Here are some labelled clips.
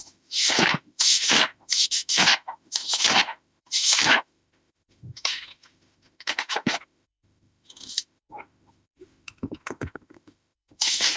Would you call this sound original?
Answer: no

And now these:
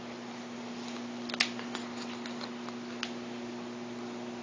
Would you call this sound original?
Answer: yes